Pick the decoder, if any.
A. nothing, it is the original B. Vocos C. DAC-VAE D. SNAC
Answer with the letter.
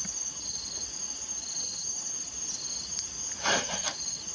A